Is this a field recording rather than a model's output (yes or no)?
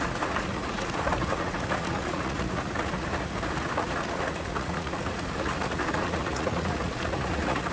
no